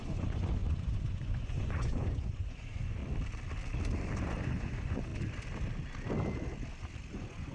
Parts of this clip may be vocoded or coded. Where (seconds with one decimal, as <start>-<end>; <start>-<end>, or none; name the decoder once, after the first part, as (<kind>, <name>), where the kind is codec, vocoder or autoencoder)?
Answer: 0.0-3.0 (vocoder, Vocos); 4.2-5.1; 7.1-7.5

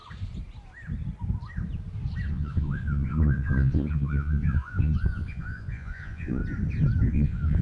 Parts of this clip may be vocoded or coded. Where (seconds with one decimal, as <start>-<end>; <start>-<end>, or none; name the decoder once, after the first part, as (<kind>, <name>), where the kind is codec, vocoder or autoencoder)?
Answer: 2.3-6.4 (vocoder, Vocos); 7.1-7.6

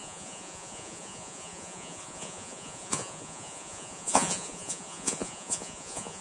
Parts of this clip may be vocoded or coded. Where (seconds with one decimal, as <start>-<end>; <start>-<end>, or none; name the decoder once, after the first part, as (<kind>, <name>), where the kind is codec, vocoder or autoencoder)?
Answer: 0.0-6.2 (vocoder, Vocos)

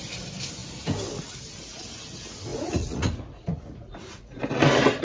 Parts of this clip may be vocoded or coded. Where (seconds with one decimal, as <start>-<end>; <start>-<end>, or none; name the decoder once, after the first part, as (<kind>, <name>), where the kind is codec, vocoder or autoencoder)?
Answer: 2.5-4.4 (vocoder, Vocos)

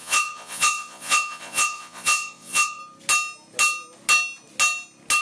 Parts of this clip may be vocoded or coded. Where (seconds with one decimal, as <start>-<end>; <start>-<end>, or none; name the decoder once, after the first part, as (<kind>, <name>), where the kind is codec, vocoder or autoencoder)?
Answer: 0.0-2.8 (vocoder, Vocos)